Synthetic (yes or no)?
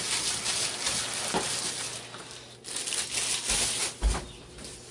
no